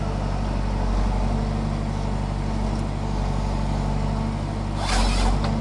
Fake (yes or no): no